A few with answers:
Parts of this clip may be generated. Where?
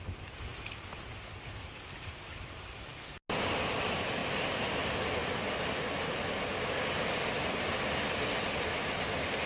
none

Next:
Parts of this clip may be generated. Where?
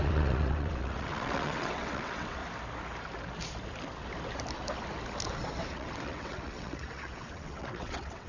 0.0-2.4; 5.7-8.3